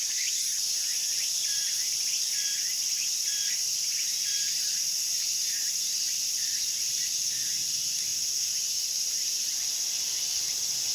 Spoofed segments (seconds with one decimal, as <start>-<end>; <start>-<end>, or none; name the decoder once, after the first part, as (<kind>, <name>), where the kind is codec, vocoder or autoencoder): 0.0-8.1 (vocoder, BigVGAN v2); 9.0-10.9